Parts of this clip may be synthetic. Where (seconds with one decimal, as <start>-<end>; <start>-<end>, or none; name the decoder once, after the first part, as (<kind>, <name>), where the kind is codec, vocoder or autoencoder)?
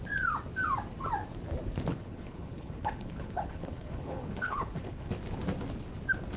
1.9-5.1 (codec, HILCodec)